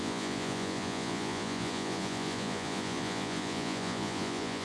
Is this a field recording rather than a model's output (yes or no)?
no